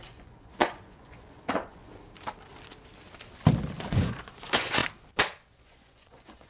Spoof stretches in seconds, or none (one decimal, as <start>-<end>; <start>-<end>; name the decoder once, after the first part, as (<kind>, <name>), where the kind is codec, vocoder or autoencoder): 0.0-1.9 (vocoder, Vocos); 3.9-4.8; 5.5-6.5